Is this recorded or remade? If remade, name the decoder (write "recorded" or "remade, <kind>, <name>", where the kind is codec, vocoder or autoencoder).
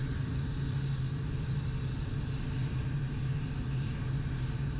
recorded